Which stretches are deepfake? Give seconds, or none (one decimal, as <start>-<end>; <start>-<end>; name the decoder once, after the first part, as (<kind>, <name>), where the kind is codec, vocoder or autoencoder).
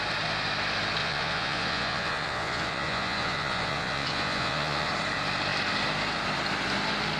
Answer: 1.0-4.9 (vocoder, Vocos)